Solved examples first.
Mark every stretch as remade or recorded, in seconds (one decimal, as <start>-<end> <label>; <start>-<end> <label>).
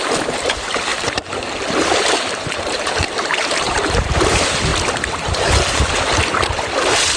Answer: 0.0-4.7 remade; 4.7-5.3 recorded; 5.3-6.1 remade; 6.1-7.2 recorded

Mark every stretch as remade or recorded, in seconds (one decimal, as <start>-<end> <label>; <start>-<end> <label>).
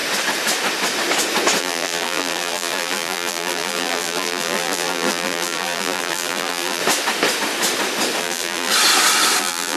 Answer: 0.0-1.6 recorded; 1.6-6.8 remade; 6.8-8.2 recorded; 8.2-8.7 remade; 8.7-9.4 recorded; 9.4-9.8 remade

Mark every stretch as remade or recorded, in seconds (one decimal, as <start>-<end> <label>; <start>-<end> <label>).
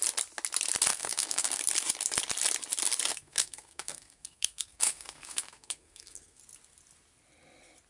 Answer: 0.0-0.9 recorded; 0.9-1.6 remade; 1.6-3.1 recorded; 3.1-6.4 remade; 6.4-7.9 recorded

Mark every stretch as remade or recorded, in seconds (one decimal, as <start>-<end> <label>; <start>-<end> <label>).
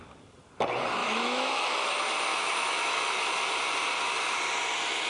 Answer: 0.0-1.0 recorded; 1.0-1.9 remade; 1.9-2.3 recorded; 2.3-3.2 remade; 3.2-5.1 recorded